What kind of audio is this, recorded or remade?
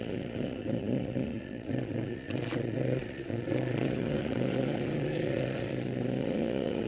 remade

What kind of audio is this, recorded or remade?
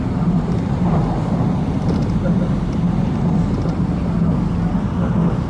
recorded